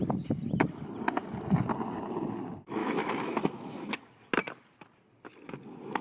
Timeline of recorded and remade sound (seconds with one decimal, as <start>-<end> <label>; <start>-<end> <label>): 0.0-2.8 recorded; 2.8-3.9 remade; 3.9-6.0 recorded